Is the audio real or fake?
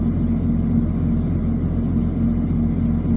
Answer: real